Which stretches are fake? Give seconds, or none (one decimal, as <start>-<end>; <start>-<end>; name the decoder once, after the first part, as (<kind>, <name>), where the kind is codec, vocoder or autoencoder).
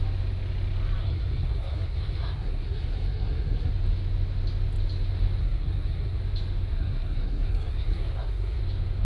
1.0-3.7 (codec, SNAC); 5.4-6.2; 6.7-8.6